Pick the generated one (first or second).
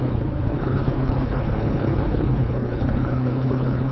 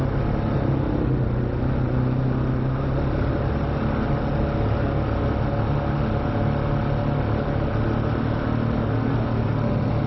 first